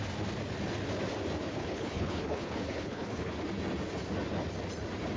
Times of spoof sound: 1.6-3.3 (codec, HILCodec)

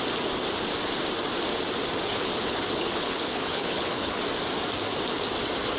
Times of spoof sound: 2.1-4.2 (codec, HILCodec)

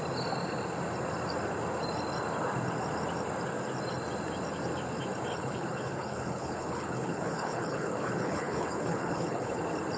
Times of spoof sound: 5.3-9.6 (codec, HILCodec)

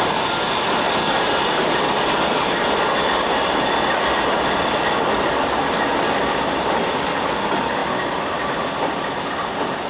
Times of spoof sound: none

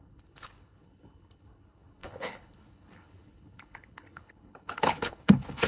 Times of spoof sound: 0.0-5.7 (codec, HILCodec)

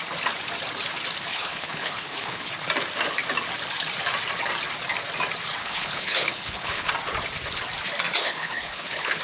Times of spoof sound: 1.3-2.5 (codec, HILCodec); 5.6-6.9; 8.2-9.2